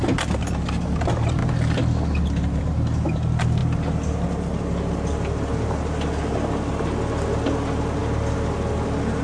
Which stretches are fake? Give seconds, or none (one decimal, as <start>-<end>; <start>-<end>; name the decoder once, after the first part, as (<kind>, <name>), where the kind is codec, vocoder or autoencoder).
none